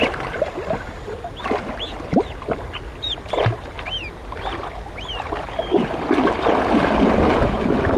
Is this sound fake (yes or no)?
no